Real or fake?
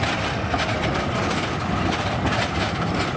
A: real